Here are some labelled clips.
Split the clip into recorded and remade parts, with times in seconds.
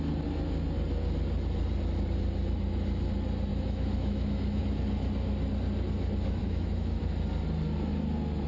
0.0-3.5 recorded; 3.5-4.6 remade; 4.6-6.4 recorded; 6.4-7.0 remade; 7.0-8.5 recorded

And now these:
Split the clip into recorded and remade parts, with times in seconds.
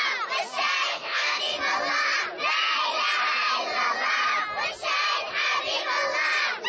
0.0-0.9 recorded; 0.9-1.4 remade; 1.4-6.7 recorded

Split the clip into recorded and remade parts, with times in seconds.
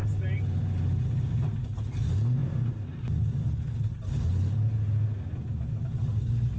0.0-6.6 recorded